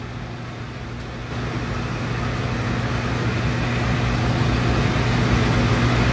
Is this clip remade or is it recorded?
recorded